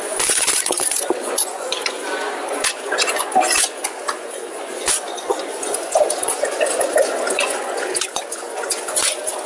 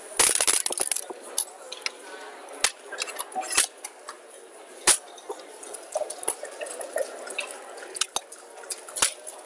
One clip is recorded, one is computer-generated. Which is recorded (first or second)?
second